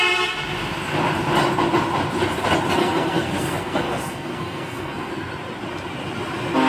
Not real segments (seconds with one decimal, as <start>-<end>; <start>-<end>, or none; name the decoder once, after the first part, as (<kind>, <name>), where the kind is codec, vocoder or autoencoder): 2.8-5.1 (codec, SNAC)